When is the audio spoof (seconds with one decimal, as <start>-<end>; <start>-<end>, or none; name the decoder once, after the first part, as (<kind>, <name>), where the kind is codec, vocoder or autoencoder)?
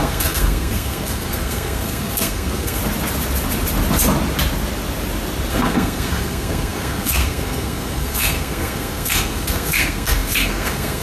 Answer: 0.0-2.8 (codec, SNAC); 5.5-11.0